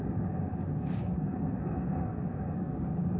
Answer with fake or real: fake